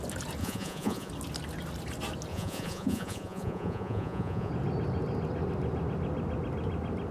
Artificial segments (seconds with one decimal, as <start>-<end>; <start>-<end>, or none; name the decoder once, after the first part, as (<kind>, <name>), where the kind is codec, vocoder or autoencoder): 0.4-1.1 (vocoder, Vocos); 2.3-4.5